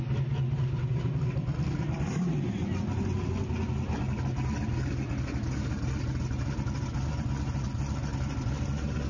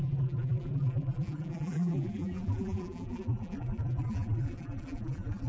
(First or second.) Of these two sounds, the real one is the first